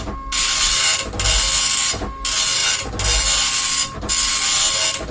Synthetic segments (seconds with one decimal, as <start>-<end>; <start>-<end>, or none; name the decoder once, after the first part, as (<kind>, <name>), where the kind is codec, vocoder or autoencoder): none